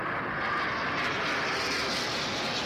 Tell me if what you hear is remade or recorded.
recorded